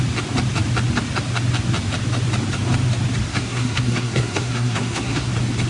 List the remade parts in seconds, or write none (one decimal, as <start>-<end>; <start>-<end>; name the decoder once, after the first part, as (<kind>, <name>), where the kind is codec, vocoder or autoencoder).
3.3-5.3 (codec, SNAC)